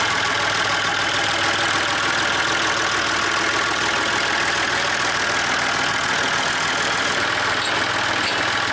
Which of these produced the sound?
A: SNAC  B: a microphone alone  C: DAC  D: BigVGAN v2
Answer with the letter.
B